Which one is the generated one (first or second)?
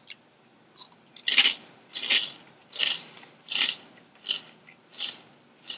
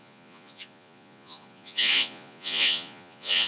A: second